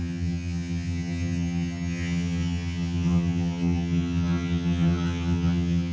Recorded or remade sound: remade